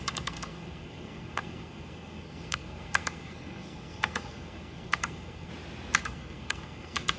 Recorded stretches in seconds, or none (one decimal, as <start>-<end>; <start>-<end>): 5.5-6.0